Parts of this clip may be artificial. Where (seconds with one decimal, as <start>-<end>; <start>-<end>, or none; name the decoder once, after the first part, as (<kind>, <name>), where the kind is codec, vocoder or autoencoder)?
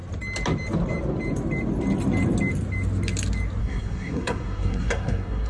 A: 3.6-5.5 (codec, SNAC)